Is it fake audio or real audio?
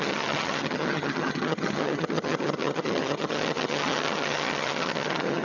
fake